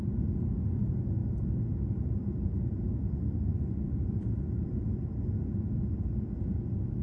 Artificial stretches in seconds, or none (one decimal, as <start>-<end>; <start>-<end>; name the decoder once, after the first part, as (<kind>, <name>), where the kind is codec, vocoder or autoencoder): 3.5-4.8 (vocoder, BigVGAN v2)